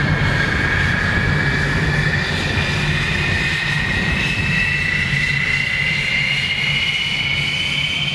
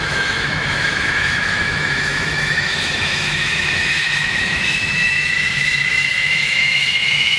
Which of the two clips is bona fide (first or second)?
first